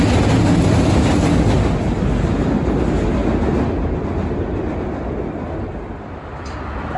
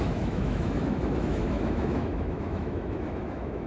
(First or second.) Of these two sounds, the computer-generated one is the second